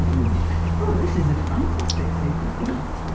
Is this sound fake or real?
real